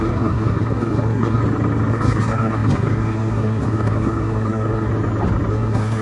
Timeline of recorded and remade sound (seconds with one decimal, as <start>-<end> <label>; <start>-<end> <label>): 0.0-1.4 remade; 1.4-1.9 recorded; 1.9-4.9 remade; 4.9-5.5 recorded; 5.5-6.0 remade